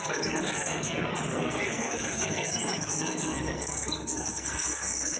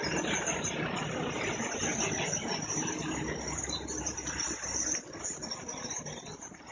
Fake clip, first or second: first